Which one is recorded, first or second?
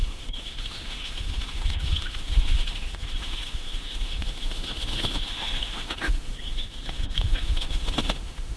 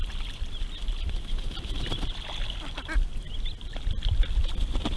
second